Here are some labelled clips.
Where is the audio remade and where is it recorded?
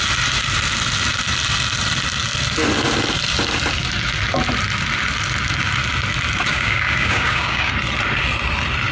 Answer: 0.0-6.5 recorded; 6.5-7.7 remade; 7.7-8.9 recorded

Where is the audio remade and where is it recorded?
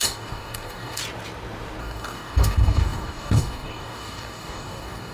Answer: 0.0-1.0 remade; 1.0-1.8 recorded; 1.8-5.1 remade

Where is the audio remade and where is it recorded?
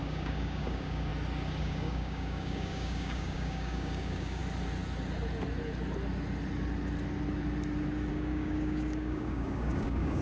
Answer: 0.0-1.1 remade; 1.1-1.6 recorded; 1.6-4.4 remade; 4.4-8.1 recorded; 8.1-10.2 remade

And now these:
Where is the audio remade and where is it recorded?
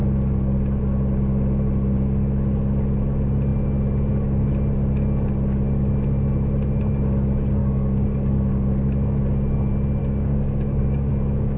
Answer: 0.0-7.6 recorded; 7.6-8.5 remade; 8.5-10.0 recorded; 10.0-11.1 remade; 11.1-11.6 recorded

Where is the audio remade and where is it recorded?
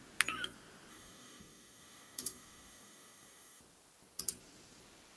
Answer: 0.0-0.9 recorded; 0.9-3.6 remade; 3.6-5.2 recorded